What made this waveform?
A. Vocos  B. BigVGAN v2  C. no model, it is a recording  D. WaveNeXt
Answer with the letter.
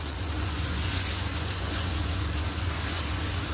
A